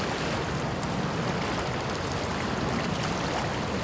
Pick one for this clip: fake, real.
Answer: real